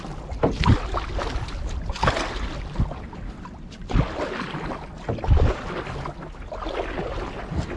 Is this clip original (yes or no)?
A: yes